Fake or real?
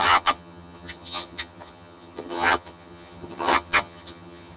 fake